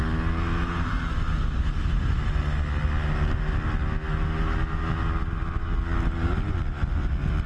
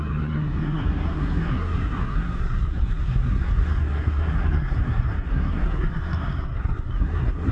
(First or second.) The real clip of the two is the first